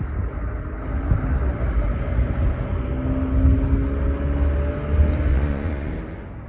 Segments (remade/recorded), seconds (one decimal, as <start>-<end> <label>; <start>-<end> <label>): 0.0-5.3 recorded; 5.3-5.9 remade; 5.9-6.5 recorded